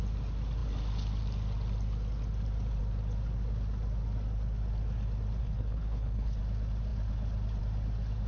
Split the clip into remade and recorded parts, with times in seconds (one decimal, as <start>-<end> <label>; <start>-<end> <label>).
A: 0.0-5.4 recorded; 5.4-6.4 remade; 6.4-8.3 recorded